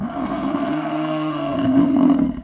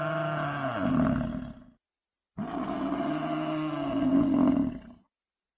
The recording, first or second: second